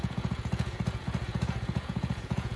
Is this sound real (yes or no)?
no